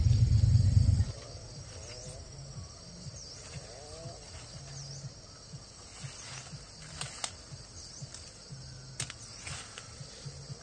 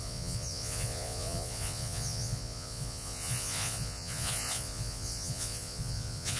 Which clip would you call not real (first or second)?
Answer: second